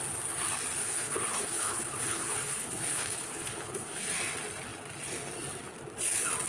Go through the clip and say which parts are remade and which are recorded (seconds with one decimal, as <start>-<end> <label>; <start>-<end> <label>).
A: 0.0-0.8 recorded; 0.8-4.1 remade; 4.1-6.5 recorded